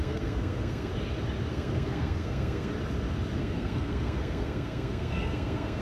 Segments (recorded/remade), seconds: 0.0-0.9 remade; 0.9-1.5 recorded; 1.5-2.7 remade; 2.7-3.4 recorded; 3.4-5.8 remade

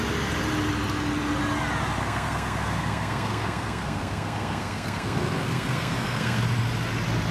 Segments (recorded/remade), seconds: 0.0-2.0 recorded; 2.0-6.4 remade; 6.4-7.3 recorded

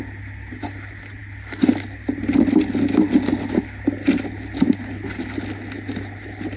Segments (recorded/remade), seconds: 0.0-6.6 recorded